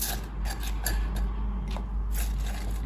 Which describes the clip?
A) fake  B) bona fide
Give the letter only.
B